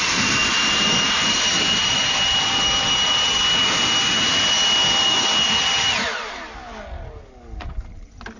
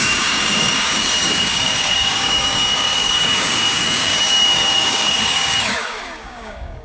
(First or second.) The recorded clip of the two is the first